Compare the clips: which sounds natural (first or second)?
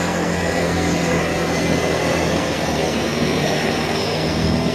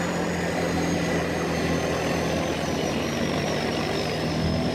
second